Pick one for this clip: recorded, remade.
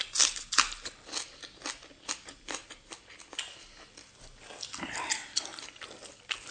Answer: recorded